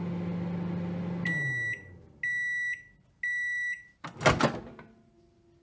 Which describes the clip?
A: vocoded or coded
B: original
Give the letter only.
B